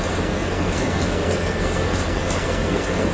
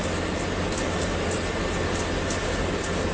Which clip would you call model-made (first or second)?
first